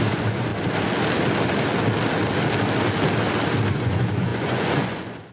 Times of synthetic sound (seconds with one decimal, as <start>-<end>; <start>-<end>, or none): 0.0-0.5; 3.7-5.3